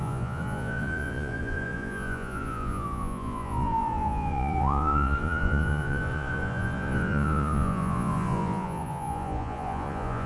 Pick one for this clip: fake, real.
fake